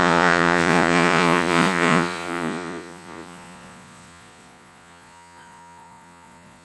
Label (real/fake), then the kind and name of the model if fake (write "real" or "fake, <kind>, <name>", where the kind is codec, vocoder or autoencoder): fake, vocoder, Vocos